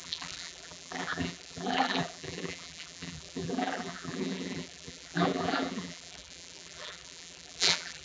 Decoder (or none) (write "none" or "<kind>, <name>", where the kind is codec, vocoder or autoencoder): vocoder, BigVGAN v2